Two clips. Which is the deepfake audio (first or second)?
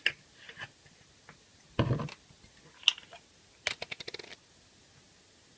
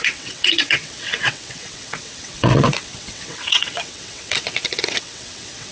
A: second